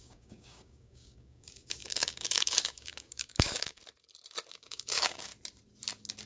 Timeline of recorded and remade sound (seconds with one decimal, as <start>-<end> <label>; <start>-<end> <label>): 0.0-3.8 remade; 3.8-4.5 recorded; 4.5-5.3 remade; 5.3-6.3 recorded